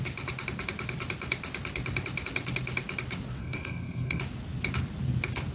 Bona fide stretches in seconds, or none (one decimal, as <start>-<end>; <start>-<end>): 0.0-3.4; 4.2-5.5